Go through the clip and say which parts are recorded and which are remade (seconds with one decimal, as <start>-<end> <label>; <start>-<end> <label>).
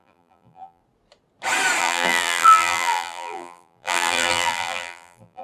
0.0-0.8 remade; 0.8-1.8 recorded; 1.8-5.4 remade